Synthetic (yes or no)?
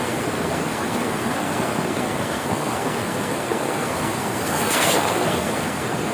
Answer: yes